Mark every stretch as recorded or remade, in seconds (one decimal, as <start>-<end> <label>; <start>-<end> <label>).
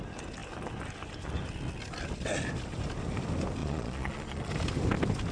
0.0-3.6 recorded; 3.6-4.5 remade; 4.5-5.3 recorded